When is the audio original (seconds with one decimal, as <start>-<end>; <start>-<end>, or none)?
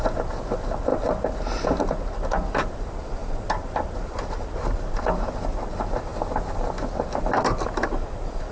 0.0-8.5